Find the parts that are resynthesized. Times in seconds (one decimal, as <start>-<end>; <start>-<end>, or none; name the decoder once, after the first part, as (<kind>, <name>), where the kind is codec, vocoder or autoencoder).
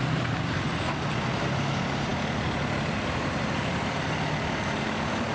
none